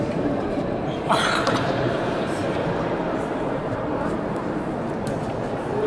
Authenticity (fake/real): fake